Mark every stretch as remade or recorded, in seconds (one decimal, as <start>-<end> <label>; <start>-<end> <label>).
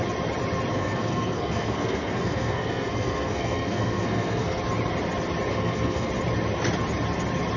0.0-0.7 recorded; 0.7-4.6 remade; 4.6-5.5 recorded; 5.5-6.1 remade; 6.1-7.6 recorded